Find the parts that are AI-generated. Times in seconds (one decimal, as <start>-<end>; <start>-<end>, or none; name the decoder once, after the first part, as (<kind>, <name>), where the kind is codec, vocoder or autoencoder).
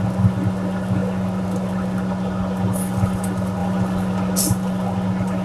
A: none